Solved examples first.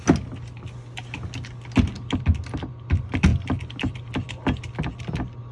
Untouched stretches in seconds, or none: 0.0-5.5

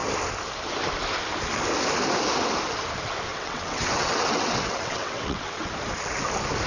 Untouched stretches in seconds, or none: 0.0-3.3; 5.7-6.7